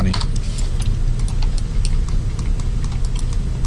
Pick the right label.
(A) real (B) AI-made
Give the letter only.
A